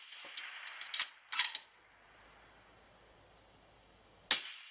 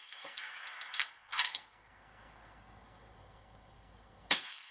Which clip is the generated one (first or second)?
second